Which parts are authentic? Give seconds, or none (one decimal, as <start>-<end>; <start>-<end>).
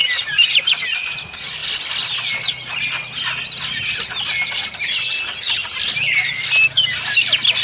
1.2-7.6